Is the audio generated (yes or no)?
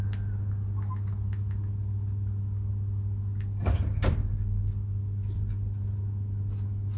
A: no